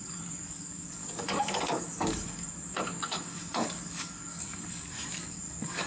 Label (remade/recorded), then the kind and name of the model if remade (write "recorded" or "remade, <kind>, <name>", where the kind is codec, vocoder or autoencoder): remade, codec, DAC